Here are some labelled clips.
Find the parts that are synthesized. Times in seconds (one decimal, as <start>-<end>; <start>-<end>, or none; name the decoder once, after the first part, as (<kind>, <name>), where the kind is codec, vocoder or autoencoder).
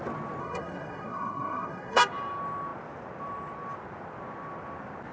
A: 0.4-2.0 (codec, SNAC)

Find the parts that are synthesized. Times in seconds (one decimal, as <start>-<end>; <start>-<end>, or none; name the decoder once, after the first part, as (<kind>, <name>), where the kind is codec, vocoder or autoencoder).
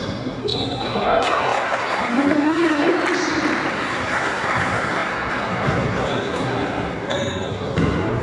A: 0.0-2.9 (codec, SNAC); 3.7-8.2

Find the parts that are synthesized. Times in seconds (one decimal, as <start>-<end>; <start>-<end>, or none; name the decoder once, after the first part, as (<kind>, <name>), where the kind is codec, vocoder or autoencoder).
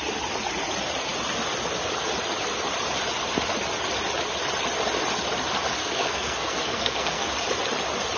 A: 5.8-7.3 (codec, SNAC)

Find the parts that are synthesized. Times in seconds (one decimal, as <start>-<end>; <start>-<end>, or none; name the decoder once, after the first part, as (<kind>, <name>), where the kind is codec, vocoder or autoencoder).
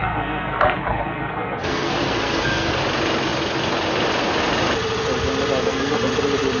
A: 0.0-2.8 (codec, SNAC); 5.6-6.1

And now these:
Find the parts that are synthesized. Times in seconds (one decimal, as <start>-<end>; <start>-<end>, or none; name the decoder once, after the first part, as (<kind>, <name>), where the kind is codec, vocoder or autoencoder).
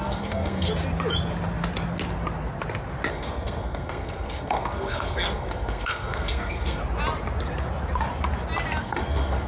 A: 0.0-0.7 (codec, SNAC); 3.1-6.8; 8.8-9.5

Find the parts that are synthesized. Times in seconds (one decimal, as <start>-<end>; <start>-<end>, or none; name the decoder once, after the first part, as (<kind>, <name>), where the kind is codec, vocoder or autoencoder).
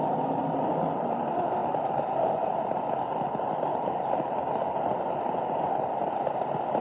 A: none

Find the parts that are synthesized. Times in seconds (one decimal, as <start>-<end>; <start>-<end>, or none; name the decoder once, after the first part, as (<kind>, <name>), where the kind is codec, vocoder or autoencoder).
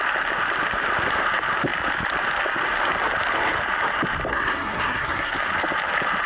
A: 4.3-5.3 (codec, SNAC)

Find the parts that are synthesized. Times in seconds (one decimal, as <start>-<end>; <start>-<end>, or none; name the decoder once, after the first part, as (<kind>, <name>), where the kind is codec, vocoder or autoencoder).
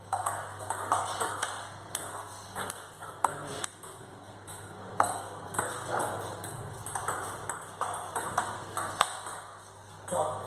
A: 0.0-6.8 (codec, SNAC); 8.1-10.5